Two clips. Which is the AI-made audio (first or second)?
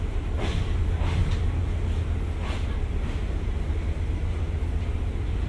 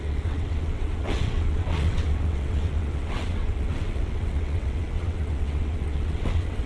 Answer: second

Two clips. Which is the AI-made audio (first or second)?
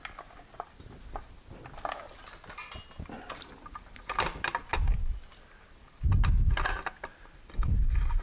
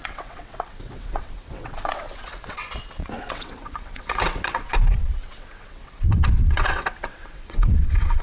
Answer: second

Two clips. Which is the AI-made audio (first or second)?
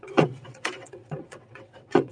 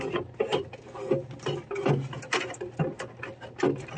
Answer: first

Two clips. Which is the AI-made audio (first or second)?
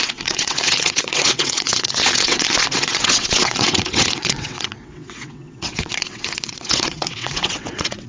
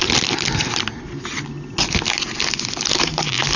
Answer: first